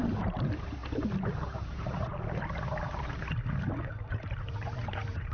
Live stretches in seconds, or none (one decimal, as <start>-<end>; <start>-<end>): 0.8-1.6; 3.2-3.8